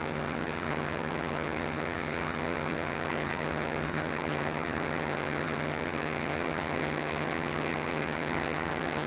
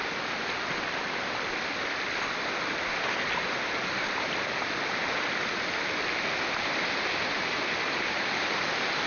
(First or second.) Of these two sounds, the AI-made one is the first